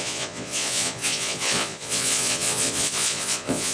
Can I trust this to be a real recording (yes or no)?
no